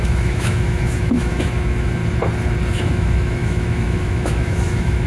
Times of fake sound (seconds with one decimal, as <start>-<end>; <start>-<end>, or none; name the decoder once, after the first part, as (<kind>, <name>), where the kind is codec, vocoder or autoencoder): 0.0-2.0 (autoencoder, DAC-VAE); 2.7-5.1